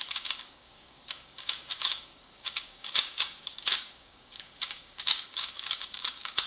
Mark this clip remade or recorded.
remade